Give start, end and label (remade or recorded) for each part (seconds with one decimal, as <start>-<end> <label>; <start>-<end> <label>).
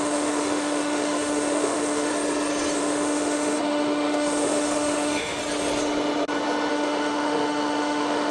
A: 0.0-2.1 remade; 2.1-2.8 recorded; 2.8-5.4 remade; 5.4-6.7 recorded; 6.7-8.3 remade